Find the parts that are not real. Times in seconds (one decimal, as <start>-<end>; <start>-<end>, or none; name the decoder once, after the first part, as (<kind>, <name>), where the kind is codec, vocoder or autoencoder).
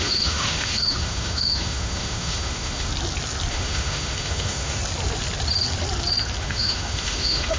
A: 0.0-2.9 (autoencoder, DAC-VAE); 3.5-4.8; 6.4-7.6